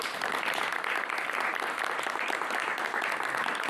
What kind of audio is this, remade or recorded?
remade